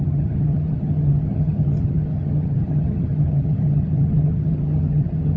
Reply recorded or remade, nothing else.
remade